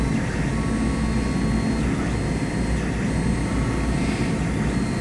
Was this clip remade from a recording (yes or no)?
no